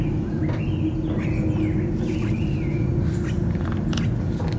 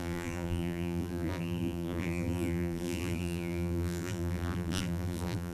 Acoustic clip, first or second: first